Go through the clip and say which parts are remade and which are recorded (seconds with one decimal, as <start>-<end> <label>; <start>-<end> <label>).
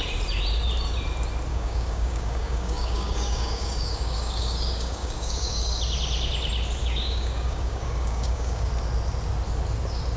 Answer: 0.0-1.5 recorded; 1.5-5.8 remade; 5.8-6.8 recorded; 6.8-8.7 remade; 8.7-10.2 recorded